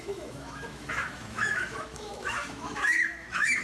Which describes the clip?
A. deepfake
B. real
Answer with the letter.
A